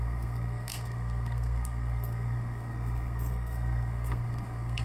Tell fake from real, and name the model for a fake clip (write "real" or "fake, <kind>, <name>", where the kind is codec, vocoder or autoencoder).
fake, codec, SNAC